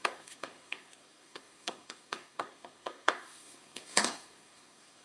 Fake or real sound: fake